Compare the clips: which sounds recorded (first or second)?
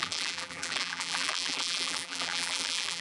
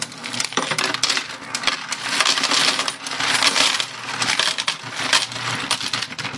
second